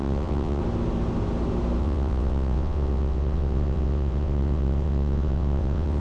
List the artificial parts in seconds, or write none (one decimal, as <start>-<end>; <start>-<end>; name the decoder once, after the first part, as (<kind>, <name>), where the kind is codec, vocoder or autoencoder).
0.0-0.6 (vocoder, WaveNeXt); 1.8-6.0